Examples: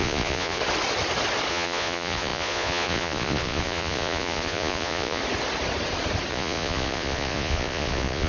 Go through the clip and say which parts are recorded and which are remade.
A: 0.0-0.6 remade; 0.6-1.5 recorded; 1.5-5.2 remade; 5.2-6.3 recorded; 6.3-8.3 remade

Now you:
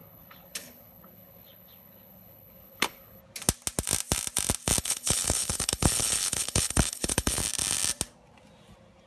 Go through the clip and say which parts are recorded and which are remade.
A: 0.0-3.2 remade; 3.2-4.8 recorded; 4.8-7.4 remade; 7.4-9.1 recorded

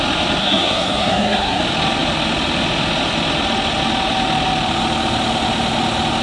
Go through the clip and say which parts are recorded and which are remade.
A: 0.0-0.4 recorded; 0.4-1.6 remade; 1.6-6.2 recorded